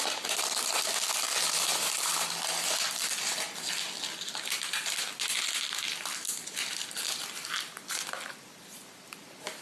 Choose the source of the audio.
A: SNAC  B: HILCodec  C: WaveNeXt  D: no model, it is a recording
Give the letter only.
D